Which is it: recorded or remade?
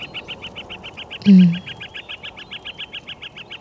recorded